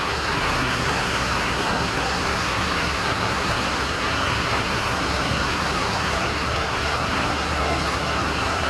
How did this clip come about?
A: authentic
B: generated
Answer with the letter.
B